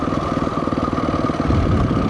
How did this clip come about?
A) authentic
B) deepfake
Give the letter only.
A